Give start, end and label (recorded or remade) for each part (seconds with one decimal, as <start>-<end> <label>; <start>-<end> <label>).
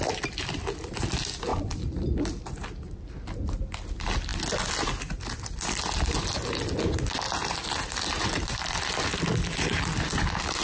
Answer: 0.0-10.6 recorded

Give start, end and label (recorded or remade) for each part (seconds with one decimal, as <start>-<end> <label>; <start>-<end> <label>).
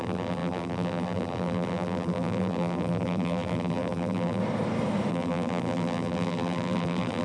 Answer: 0.0-4.4 remade; 4.4-5.1 recorded; 5.1-7.2 remade